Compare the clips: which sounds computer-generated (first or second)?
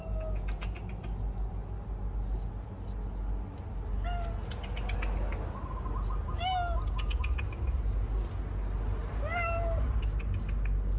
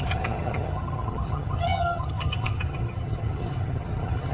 second